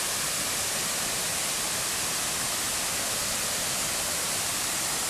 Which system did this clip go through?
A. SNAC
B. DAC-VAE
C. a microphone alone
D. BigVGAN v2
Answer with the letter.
D